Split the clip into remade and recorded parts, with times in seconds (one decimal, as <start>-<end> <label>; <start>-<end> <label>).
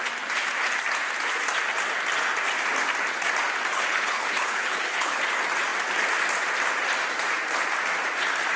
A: 0.0-3.7 recorded; 3.7-5.2 remade; 5.2-8.6 recorded